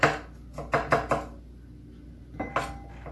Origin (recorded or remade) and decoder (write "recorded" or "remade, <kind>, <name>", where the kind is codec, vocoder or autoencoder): recorded